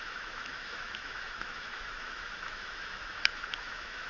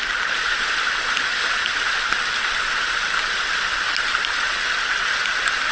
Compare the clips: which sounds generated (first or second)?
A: first